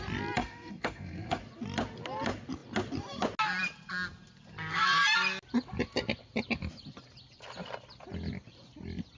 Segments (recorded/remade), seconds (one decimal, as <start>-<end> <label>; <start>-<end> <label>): 0.0-0.4 recorded; 0.4-1.4 remade; 1.4-9.2 recorded